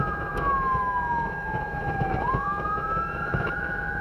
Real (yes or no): no